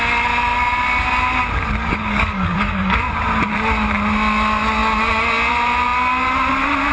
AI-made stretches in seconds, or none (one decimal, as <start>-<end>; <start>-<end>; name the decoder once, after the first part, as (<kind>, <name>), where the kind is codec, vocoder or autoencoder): 1.8-3.0 (codec, DAC)